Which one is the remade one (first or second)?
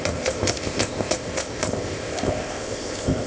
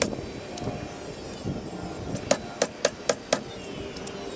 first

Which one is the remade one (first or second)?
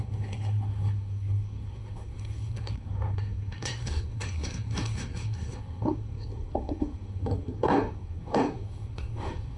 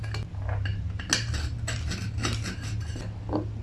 first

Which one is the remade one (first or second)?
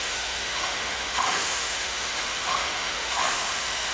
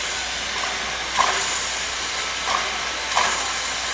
first